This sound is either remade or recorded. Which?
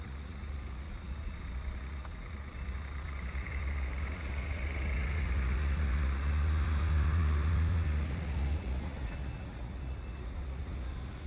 remade